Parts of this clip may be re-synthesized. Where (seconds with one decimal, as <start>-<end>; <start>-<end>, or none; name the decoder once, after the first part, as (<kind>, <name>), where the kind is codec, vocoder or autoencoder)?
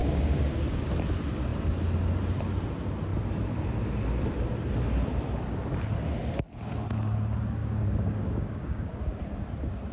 0.0-0.9 (codec, DAC); 7.6-9.2